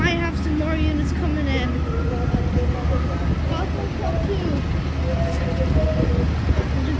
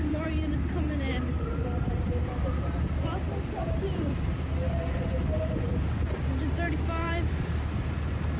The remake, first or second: second